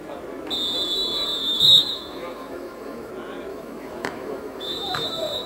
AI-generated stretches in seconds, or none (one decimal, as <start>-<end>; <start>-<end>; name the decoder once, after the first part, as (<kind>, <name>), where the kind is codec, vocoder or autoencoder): 1.4-3.1 (autoencoder, DAC-VAE); 3.5-5.5